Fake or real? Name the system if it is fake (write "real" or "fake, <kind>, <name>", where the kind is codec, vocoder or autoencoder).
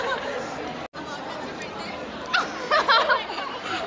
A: real